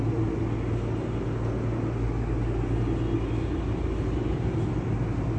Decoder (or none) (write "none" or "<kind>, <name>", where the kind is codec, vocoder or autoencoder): none